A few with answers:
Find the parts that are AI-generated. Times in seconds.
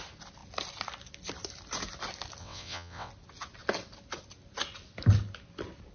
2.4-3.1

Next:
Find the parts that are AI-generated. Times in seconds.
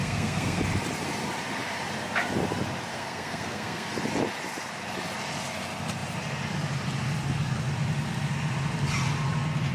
0.0-0.6; 2.9-3.9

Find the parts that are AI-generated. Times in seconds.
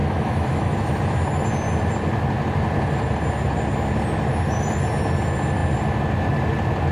0.0-1.0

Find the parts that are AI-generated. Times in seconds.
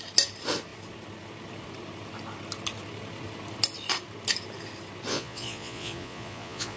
5.1-6.8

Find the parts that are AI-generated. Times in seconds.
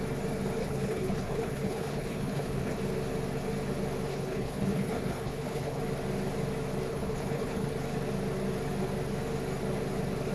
0.6-2.8; 4.1-5.8; 6.9-7.7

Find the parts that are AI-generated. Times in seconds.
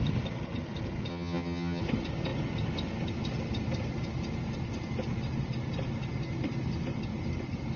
1.1-1.8